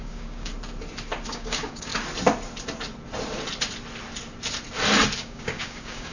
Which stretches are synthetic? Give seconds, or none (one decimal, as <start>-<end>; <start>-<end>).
0.0-0.5; 1.3-1.9; 5.2-6.1